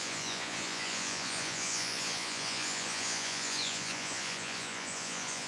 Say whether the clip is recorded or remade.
remade